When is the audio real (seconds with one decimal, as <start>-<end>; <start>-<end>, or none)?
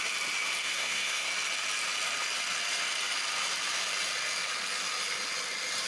0.0-0.6; 1.3-5.9